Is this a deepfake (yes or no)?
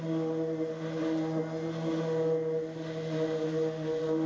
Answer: no